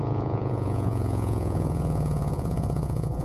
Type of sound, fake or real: fake